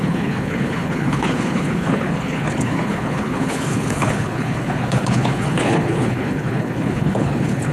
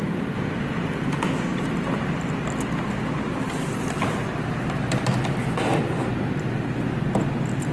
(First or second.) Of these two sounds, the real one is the second